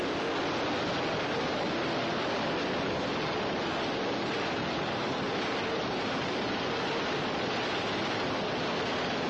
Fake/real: real